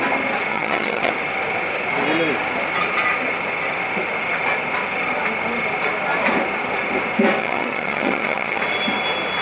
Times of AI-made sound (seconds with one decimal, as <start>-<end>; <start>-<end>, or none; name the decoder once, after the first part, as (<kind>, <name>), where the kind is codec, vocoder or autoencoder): 0.5-1.1 (vocoder, HiFi-GAN); 7.4-8.6